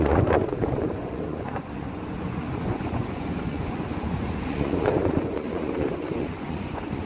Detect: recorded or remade remade